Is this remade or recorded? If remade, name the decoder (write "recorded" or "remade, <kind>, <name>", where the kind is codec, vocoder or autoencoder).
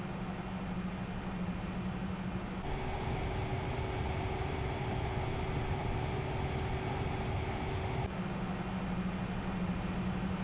recorded